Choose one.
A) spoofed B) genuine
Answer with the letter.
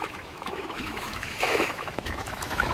A